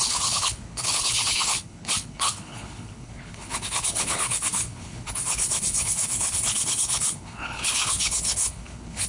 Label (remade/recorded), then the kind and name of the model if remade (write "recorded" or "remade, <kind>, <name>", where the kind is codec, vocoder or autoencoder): remade, codec, HILCodec